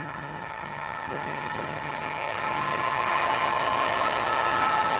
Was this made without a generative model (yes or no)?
no